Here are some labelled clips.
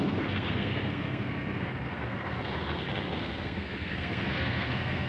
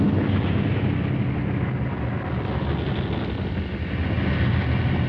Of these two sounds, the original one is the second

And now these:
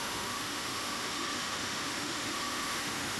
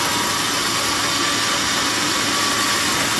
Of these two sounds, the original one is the second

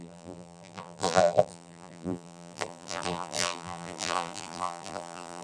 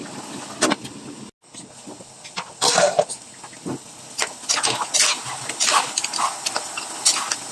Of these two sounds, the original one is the second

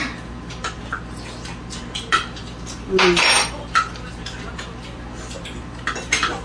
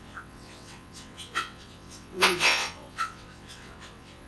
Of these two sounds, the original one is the first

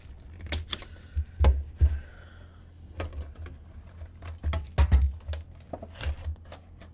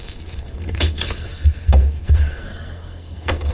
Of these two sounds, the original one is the first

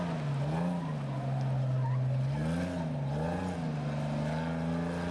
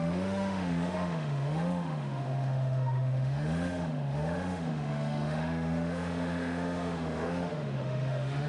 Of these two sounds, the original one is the first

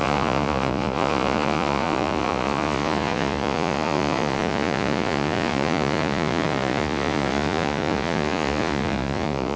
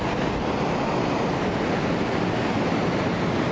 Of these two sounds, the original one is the second